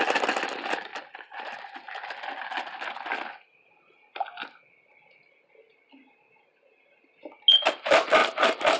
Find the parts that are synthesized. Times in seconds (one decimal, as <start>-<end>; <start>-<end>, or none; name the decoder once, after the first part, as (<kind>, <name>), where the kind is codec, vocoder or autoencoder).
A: 8.2-8.8 (vocoder, BigVGAN v2)